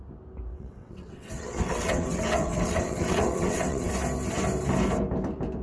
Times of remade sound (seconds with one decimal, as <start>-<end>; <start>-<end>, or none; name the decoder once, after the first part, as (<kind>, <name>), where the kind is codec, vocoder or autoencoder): 0.5-3.9 (vocoder, WaveNeXt)